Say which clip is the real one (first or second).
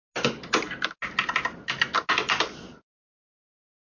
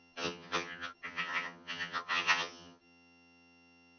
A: first